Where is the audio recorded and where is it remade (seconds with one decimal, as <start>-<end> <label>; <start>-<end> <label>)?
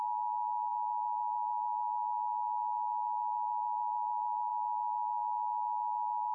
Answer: 0.0-6.3 recorded